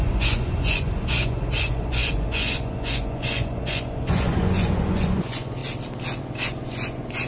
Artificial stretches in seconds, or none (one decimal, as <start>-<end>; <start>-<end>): 0.0-5.6; 6.2-7.3